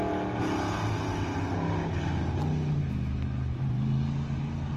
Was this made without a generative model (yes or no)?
yes